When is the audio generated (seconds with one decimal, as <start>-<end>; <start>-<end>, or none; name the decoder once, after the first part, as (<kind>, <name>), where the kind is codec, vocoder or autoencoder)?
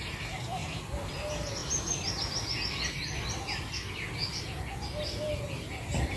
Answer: none